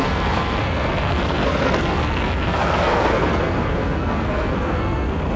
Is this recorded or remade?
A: remade